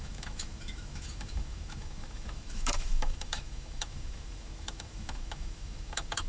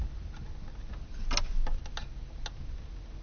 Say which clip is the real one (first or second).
second